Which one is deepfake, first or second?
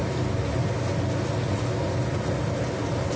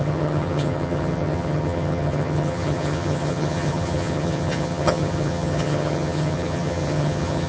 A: second